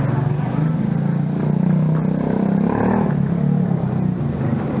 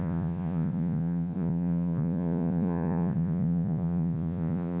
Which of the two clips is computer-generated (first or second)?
second